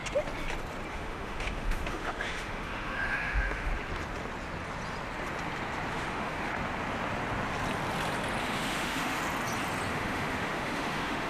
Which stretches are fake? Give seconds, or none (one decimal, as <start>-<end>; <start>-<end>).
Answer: 0.9-3.7; 5.9-6.5; 8.4-9.2; 9.9-11.3